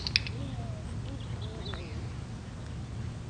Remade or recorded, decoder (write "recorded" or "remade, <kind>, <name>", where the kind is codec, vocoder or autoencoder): recorded